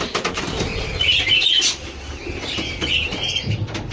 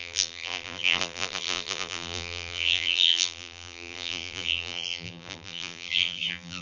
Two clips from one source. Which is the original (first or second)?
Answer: first